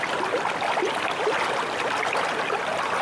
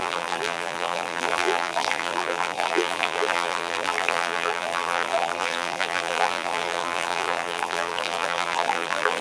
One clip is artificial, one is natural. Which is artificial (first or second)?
second